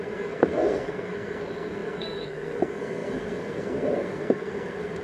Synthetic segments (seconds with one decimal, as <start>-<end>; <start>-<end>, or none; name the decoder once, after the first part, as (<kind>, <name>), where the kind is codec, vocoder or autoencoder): 0.0-5.0 (codec, SNAC)